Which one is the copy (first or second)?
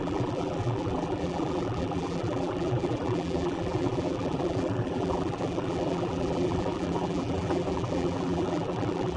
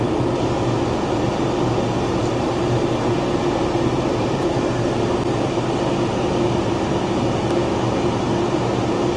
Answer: first